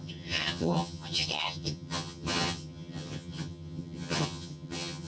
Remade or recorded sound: remade